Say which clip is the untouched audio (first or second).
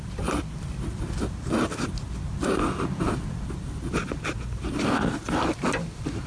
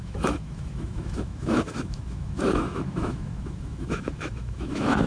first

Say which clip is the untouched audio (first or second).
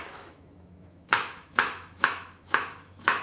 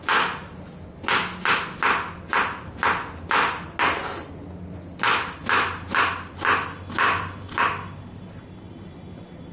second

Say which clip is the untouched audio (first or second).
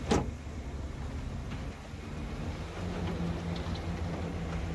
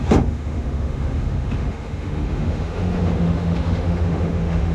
first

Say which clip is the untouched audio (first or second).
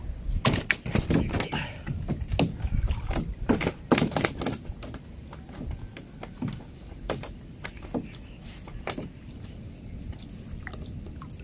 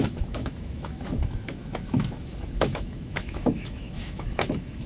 first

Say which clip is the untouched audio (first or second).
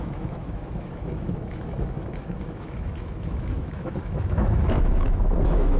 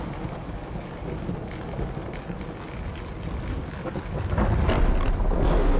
second